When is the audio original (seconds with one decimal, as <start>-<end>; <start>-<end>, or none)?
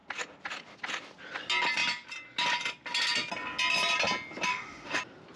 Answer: 0.0-4.5; 5.0-5.4